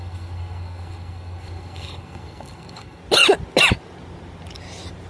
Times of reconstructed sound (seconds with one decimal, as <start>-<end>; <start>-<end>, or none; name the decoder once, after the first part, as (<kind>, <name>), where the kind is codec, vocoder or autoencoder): 0.0-3.0 (codec, SNAC)